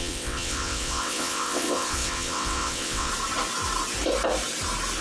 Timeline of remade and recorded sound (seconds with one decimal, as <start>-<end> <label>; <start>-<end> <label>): 0.0-3.1 remade; 3.1-5.0 recorded